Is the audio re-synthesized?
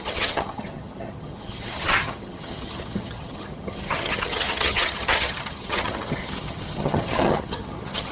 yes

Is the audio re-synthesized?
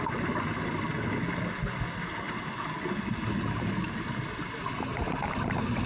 no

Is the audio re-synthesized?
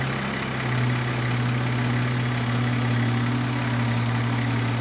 no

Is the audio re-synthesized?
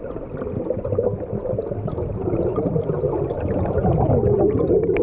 yes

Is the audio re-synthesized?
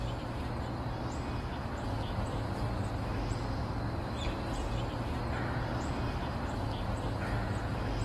no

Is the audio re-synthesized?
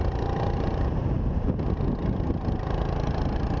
no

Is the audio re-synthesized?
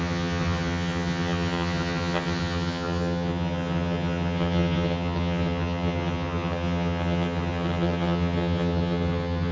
yes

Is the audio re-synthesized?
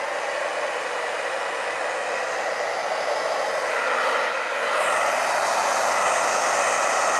no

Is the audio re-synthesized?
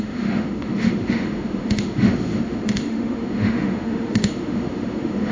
yes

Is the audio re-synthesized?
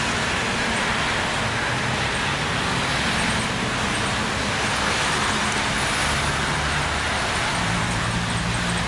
no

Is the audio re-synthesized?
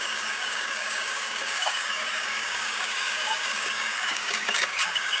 yes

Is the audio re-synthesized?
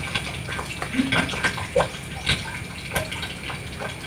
no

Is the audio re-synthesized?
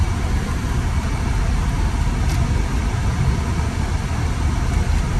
no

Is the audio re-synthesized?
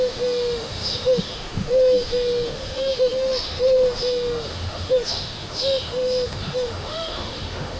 yes